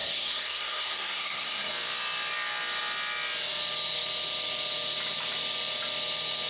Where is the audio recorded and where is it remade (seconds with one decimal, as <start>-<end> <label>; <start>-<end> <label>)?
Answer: 0.0-1.7 remade; 1.7-6.5 recorded

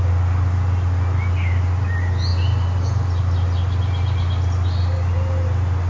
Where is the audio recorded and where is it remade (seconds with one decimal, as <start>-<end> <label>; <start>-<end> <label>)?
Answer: 0.0-5.9 recorded

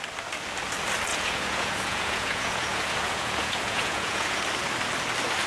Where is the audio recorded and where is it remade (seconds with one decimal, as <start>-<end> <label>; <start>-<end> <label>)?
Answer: 0.0-1.1 recorded; 1.1-4.4 remade; 4.4-5.5 recorded

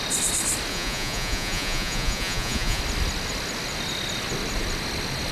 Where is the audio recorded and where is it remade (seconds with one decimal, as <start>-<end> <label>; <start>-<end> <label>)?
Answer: 0.0-0.7 recorded; 0.7-2.8 remade; 2.8-5.3 recorded

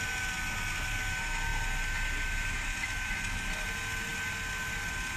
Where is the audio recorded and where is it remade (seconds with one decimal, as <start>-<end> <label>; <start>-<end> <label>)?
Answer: 0.0-5.2 recorded